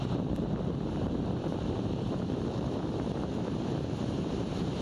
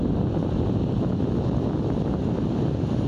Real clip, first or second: second